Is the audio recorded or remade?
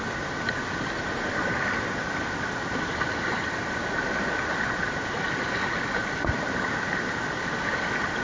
recorded